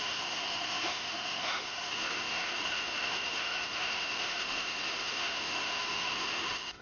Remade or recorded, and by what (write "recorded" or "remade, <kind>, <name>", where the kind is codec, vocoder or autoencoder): remade, autoencoder, DAC-VAE